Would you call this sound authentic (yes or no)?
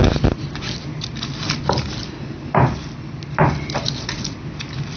yes